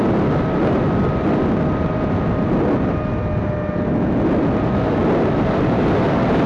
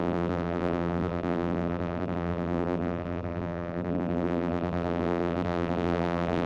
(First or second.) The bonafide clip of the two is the first